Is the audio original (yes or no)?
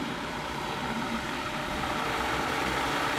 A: no